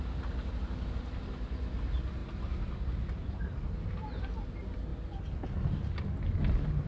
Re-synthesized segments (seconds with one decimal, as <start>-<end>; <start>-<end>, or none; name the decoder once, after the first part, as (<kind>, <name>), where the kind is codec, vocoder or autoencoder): none